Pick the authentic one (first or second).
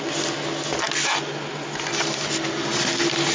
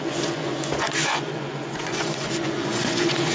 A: first